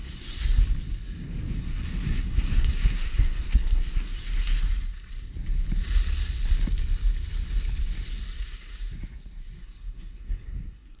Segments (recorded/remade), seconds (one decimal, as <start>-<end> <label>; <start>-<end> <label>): 0.0-0.6 remade; 0.6-1.6 recorded; 1.6-4.7 remade; 4.7-9.6 recorded; 9.6-11.0 remade